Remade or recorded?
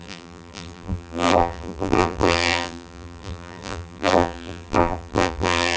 remade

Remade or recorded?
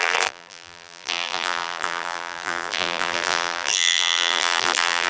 remade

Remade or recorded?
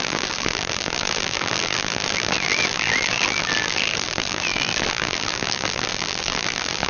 remade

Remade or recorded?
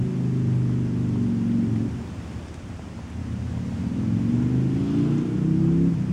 recorded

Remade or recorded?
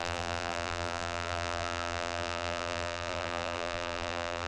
remade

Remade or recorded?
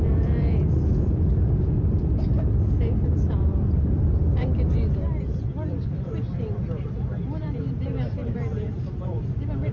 remade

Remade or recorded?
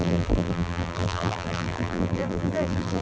remade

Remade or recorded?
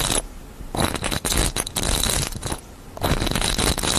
recorded